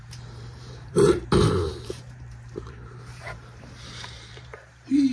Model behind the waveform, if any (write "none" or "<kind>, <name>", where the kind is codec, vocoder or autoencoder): vocoder, BigVGAN v2